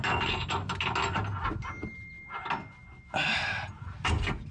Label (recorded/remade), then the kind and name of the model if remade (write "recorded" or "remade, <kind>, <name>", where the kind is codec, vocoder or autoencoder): recorded